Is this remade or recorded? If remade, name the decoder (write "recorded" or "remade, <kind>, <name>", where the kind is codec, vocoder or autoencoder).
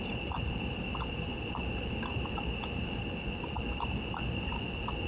remade, vocoder, BigVGAN v2